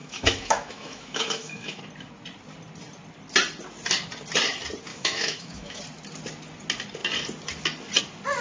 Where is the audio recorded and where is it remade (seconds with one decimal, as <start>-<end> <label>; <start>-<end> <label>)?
0.0-1.8 remade; 1.8-4.9 recorded; 4.9-5.8 remade; 5.8-8.4 recorded